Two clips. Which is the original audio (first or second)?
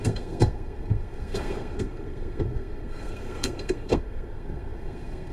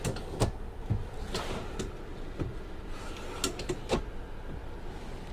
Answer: second